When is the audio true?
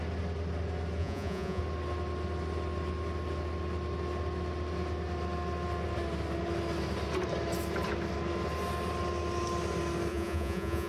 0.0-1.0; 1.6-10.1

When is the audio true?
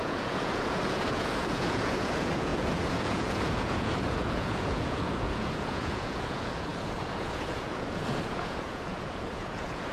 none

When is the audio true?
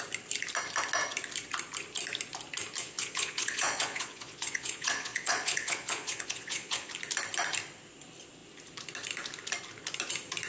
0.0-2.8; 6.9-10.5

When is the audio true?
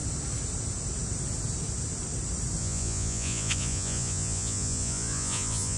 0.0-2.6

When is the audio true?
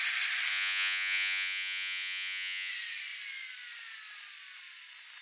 0.0-0.5; 2.7-5.2